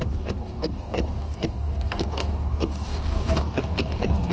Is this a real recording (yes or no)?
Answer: no